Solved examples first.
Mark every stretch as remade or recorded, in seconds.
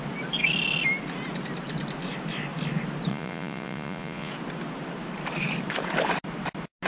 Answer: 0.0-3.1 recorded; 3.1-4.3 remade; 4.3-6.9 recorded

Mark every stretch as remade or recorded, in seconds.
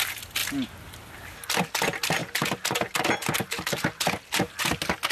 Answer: 0.0-5.1 recorded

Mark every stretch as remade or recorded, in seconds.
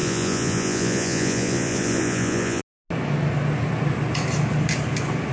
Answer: 0.0-2.6 remade; 2.6-5.3 recorded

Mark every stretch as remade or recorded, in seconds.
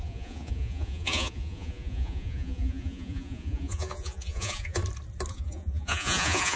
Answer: 0.0-4.8 remade; 4.8-5.3 recorded; 5.3-6.6 remade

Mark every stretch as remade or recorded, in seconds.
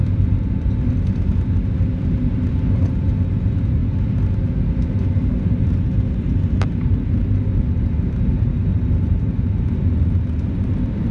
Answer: 0.0-11.1 recorded